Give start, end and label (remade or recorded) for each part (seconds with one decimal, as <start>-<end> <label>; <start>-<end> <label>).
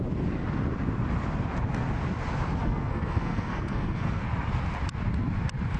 0.0-2.6 recorded; 2.6-4.2 remade; 4.2-5.8 recorded